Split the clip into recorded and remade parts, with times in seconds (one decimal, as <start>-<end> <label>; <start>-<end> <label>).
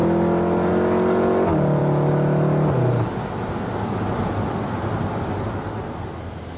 0.0-6.6 recorded